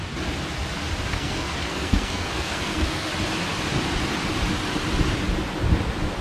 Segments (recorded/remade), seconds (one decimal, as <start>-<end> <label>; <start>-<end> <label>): 0.0-1.1 recorded; 1.1-3.1 remade; 3.1-6.2 recorded

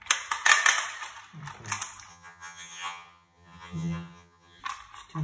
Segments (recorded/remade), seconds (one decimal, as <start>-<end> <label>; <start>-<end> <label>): 0.0-2.1 recorded; 2.1-4.6 remade; 4.6-5.2 recorded

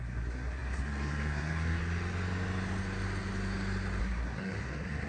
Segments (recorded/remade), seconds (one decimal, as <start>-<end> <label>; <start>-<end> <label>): 0.0-1.8 remade; 1.8-4.0 recorded; 4.0-5.1 remade

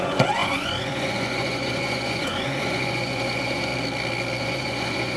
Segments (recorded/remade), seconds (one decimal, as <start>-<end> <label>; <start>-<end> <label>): 0.0-3.7 remade; 3.7-4.4 recorded; 4.4-5.2 remade